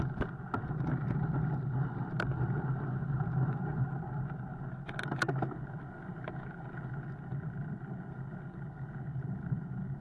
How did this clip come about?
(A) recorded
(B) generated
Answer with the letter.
A